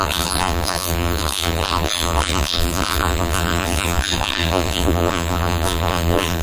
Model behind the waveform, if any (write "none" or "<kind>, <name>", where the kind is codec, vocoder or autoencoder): vocoder, BigVGAN v2